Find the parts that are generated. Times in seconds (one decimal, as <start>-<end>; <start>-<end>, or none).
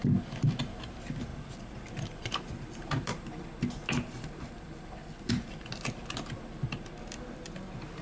0.6-1.3; 1.9-3.1; 7.0-8.0